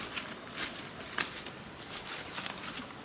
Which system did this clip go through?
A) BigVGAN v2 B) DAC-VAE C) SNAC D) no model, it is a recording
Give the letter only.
D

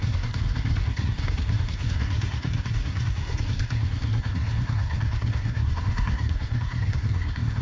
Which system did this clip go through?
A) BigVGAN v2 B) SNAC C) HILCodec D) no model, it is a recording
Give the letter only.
B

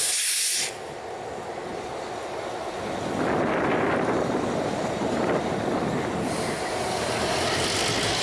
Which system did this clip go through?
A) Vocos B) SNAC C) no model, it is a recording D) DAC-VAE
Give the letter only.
C